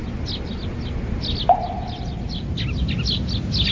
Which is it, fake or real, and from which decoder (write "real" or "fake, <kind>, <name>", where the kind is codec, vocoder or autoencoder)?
real